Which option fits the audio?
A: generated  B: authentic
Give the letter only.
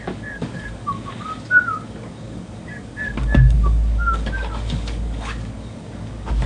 A